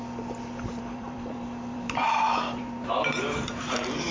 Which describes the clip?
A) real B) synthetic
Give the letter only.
B